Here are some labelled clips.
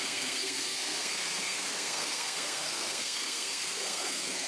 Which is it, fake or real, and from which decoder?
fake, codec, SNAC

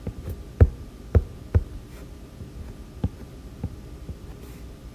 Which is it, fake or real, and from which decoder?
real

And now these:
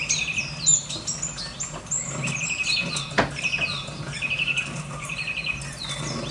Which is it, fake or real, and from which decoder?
real